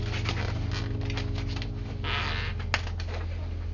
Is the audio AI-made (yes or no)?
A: no